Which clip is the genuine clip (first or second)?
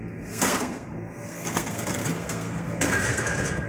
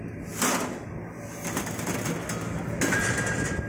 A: second